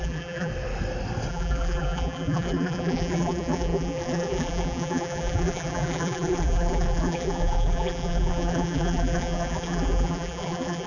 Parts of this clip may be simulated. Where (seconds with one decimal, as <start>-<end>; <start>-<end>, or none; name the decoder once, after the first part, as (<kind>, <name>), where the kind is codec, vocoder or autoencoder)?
0.0-0.5 (vocoder, BigVGAN v2); 1.3-10.9